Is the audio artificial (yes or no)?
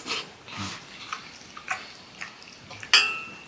no